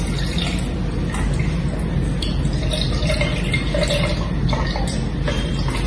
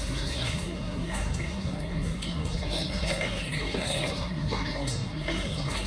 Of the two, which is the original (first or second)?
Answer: first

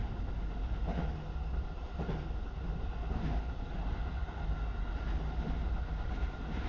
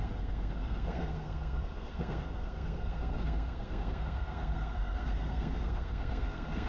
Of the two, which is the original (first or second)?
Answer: first